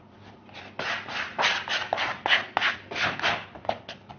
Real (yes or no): yes